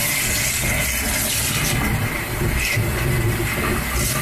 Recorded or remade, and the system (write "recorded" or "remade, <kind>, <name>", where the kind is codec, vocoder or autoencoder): recorded